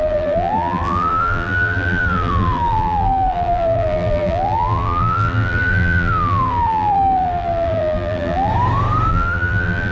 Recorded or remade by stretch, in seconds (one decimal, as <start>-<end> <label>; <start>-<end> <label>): 0.0-8.5 remade; 8.5-9.1 recorded; 9.1-9.9 remade